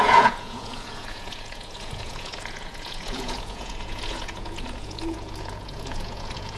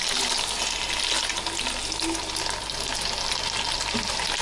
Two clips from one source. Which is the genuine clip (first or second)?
second